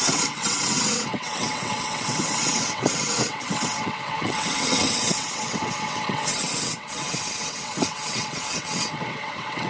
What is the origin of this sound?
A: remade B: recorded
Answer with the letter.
A